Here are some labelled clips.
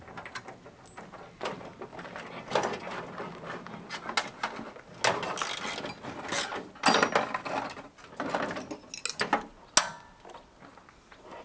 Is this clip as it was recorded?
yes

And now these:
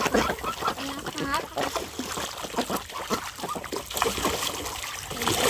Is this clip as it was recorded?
yes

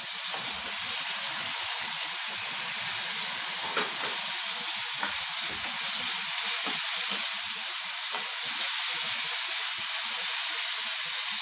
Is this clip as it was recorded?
yes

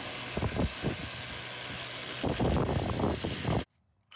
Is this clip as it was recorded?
yes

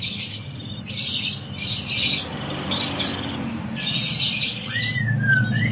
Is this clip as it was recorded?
no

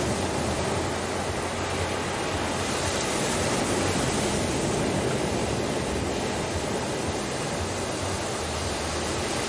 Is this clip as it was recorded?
yes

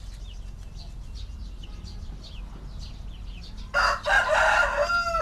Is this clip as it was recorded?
yes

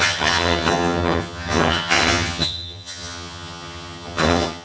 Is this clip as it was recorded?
no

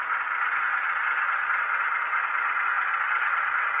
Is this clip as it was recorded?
yes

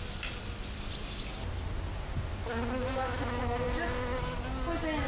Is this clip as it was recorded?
yes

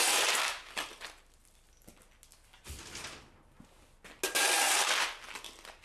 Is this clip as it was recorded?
yes